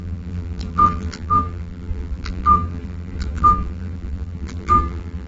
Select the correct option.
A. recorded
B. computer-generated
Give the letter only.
B